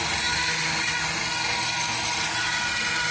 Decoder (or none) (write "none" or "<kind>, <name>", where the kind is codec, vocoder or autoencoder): none